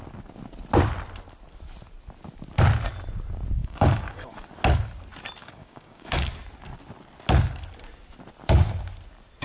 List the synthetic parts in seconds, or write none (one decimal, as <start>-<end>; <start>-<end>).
3.6-4.3; 5.4-6.3